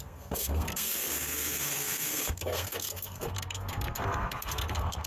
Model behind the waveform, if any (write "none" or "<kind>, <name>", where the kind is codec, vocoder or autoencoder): codec, SNAC